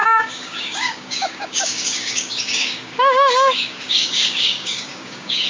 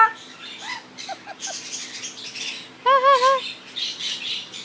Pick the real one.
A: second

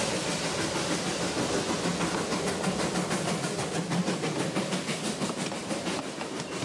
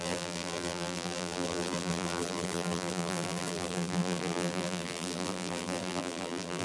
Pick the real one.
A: first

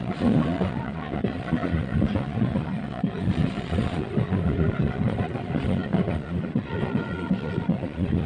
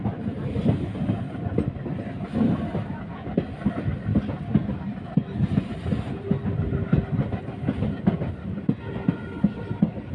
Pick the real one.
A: second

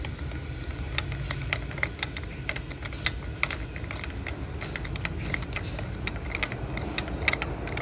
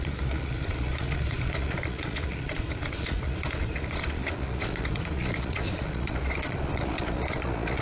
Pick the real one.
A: first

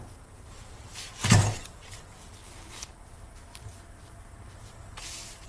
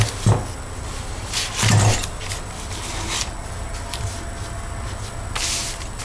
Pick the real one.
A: second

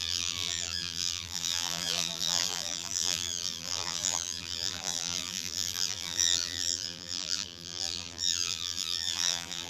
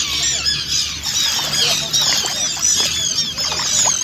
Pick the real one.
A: second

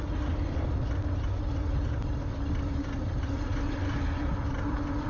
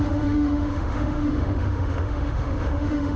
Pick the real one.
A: first